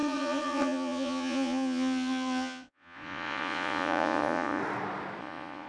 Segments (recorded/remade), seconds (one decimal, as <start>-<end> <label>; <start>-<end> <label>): 0.0-4.6 remade; 4.6-5.2 recorded; 5.2-5.7 remade